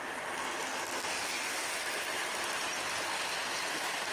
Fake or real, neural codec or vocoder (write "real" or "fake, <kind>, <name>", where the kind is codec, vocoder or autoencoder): real